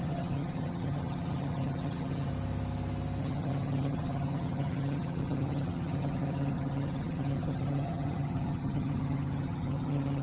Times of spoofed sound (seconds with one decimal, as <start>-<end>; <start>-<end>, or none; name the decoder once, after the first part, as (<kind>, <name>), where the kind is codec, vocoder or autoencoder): 0.0-2.3 (vocoder, HiFi-GAN); 3.2-10.2